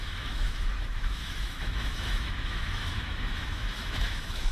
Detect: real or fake fake